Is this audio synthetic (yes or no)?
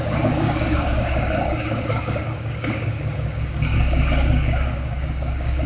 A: yes